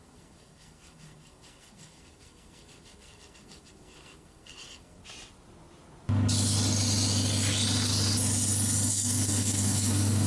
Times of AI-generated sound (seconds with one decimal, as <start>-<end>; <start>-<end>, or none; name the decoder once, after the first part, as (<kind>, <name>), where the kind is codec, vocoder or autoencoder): 0.0-5.0 (codec, SNAC); 8.9-10.3